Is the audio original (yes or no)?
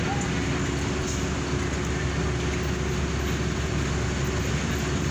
yes